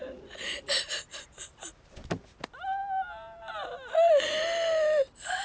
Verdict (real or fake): real